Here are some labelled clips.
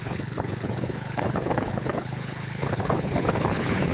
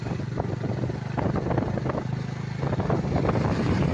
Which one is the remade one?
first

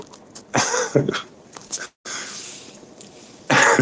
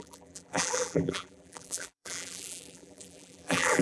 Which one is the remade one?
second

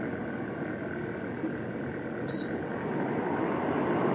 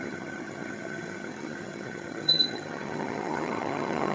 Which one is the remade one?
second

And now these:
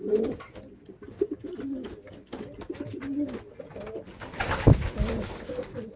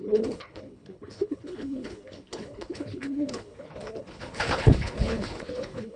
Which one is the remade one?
second